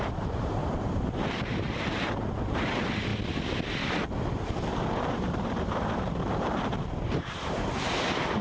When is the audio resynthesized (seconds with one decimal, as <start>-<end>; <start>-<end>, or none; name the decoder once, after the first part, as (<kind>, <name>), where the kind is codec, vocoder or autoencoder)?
0.0-3.1 (vocoder, BigVGAN v2); 4.7-8.4

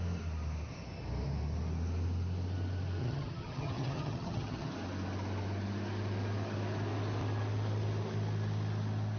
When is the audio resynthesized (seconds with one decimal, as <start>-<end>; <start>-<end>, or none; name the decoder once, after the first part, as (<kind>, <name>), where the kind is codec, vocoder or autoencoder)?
3.0-4.7 (vocoder, HiFi-GAN)

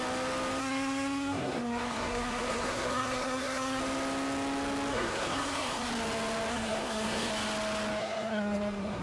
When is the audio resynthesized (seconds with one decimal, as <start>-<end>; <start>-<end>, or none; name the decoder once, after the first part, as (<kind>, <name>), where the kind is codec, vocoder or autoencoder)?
0.6-3.8 (codec, SNAC); 4.9-5.9; 6.5-7.3; 8.0-9.0

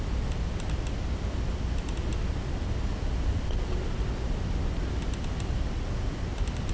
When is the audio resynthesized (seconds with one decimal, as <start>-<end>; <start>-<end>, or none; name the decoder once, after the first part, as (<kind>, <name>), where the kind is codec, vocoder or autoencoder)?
none

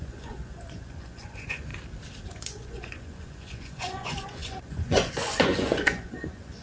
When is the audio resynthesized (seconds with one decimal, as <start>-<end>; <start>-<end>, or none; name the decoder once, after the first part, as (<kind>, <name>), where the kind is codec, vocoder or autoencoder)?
0.0-1.7 (vocoder, Vocos); 2.3-6.6

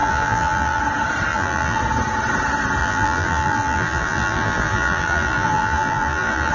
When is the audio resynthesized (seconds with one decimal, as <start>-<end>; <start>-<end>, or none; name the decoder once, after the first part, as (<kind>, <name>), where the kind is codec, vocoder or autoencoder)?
0.0-0.8 (vocoder, BigVGAN v2); 1.3-1.8; 2.8-6.5